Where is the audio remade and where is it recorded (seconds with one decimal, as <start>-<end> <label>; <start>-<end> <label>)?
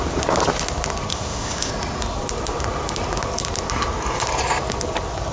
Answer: 0.0-1.1 recorded; 1.1-1.7 remade; 1.7-5.3 recorded